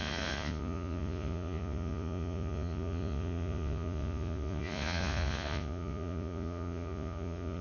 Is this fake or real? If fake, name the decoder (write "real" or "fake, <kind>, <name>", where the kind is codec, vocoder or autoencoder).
fake, vocoder, Vocos